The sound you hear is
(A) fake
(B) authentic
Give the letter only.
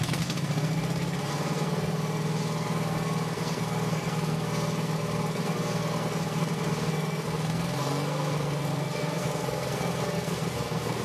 A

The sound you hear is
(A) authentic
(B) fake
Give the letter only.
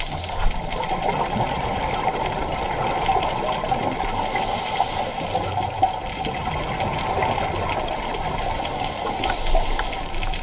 A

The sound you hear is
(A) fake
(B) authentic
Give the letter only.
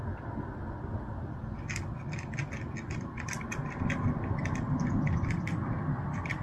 B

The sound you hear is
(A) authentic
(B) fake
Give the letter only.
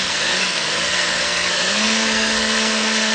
B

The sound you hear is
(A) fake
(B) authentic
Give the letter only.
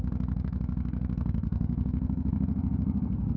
A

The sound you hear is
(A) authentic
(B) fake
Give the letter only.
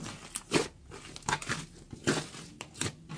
A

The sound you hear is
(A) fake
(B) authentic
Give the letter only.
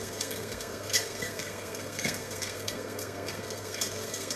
A